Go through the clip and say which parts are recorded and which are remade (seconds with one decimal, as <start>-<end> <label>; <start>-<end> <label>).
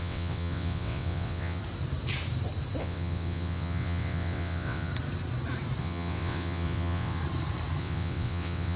0.0-1.6 remade; 1.6-2.8 recorded; 2.8-4.9 remade; 4.9-5.8 recorded; 5.8-7.2 remade; 7.2-7.8 recorded; 7.8-8.8 remade